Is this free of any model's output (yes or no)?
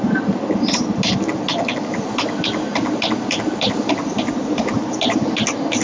yes